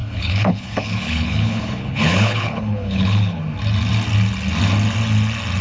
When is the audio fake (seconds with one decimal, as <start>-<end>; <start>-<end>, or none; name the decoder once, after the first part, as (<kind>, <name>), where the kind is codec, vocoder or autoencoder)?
0.0-3.4 (codec, HILCodec)

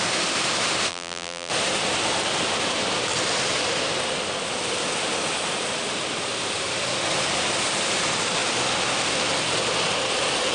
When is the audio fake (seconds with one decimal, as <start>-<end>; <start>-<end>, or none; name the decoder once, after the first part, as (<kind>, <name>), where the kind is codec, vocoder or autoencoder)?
0.9-1.5 (vocoder, BigVGAN v2)

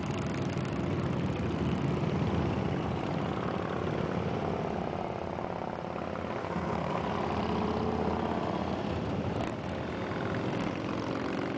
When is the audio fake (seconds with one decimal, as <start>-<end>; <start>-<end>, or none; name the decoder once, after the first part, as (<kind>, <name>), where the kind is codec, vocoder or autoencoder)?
6.4-7.0 (codec, SNAC)

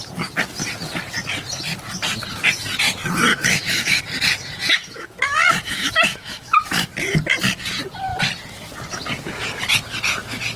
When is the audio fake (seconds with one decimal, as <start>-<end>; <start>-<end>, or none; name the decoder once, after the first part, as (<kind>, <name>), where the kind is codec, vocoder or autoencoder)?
3.3-4.0 (autoencoder, DAC-VAE); 4.6-6.9

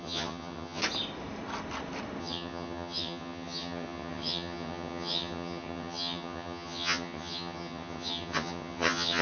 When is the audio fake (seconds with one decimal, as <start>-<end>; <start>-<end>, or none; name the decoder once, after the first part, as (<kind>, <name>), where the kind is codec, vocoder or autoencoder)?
0.0-0.8 (vocoder, HiFi-GAN); 2.2-9.2